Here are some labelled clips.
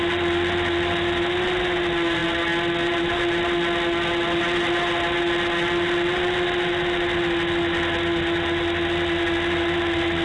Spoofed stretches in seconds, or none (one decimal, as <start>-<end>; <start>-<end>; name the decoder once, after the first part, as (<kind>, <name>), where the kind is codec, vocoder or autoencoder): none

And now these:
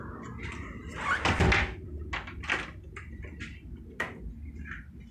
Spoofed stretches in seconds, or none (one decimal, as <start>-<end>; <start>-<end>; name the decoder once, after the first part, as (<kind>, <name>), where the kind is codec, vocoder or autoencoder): none

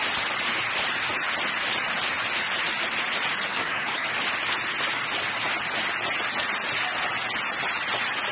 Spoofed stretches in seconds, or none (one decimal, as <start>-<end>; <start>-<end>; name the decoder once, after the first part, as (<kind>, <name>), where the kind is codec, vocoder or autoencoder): 3.5-4.1 (codec, DAC)